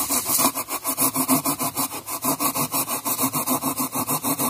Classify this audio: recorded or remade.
remade